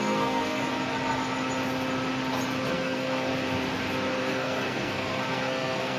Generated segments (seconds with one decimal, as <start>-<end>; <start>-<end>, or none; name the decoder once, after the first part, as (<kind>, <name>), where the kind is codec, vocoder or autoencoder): 0.0-0.6 (codec, SNAC); 2.7-3.3; 4.2-6.0